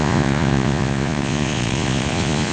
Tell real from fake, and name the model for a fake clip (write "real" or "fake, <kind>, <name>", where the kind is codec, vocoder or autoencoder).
fake, vocoder, Vocos